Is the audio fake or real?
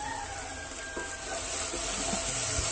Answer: real